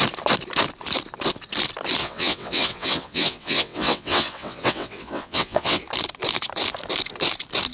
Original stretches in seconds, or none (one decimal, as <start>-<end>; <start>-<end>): 0.0-2.0; 5.8-7.7